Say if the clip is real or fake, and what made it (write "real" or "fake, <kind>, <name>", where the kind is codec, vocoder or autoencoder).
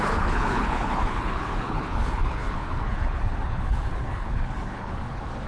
fake, codec, HILCodec